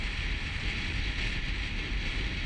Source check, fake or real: real